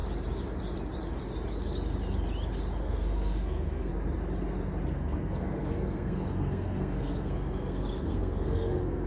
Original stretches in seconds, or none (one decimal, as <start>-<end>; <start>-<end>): 0.0-2.8; 3.9-4.9